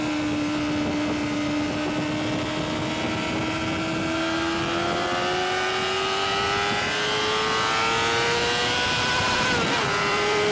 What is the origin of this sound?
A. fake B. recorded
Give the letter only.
A